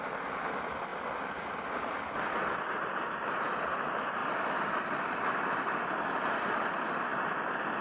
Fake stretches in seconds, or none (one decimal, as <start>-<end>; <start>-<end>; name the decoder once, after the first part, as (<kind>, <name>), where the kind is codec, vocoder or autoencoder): none